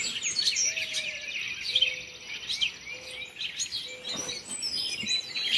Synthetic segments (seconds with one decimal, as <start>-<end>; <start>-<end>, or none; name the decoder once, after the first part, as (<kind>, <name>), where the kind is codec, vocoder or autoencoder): none